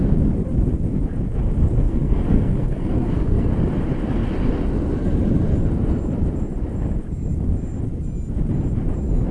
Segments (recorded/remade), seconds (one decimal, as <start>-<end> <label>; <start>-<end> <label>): 0.0-1.8 recorded; 1.8-3.5 remade; 3.5-9.3 recorded